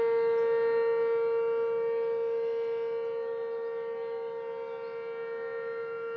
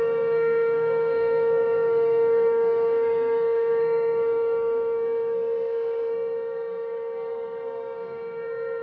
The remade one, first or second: second